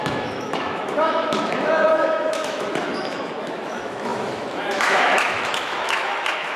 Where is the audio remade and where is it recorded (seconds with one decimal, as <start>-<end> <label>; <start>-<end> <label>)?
0.0-6.6 remade